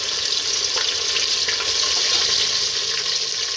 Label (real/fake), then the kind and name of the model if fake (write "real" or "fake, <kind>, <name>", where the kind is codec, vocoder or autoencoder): real